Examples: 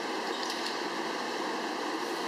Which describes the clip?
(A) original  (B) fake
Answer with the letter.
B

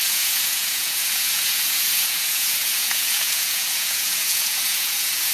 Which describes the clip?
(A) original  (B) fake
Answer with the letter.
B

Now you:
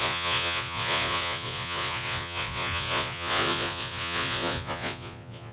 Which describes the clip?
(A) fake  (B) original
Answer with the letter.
A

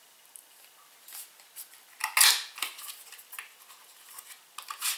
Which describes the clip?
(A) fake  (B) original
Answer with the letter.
B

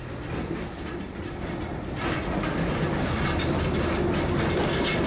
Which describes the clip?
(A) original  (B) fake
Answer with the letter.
A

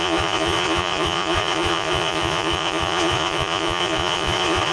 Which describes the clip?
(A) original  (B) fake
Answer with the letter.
B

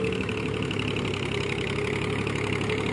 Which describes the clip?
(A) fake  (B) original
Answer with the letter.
B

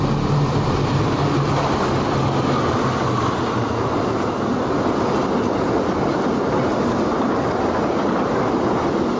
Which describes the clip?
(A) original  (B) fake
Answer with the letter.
A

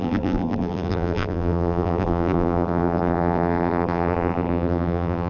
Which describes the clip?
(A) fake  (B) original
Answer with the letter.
A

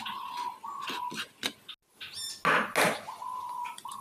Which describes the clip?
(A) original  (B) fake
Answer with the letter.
A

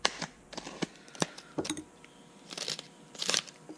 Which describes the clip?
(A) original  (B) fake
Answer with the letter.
B